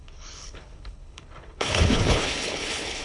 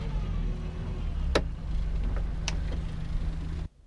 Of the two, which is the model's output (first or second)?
first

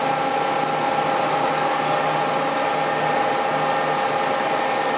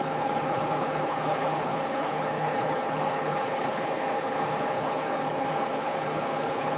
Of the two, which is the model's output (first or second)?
second